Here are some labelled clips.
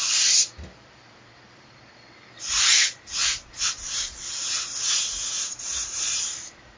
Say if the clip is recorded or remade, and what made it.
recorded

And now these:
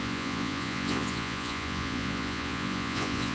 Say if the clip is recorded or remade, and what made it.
remade, vocoder, Vocos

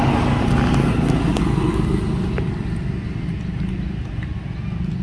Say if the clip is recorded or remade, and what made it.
recorded